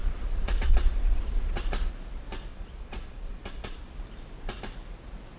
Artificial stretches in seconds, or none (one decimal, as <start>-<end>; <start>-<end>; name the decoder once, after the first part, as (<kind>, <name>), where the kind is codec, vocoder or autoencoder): 0.0-1.9 (vocoder, Vocos); 2.5-4.0